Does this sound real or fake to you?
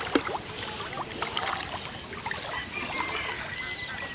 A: real